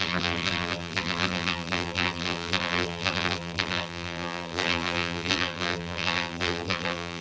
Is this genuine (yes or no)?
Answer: no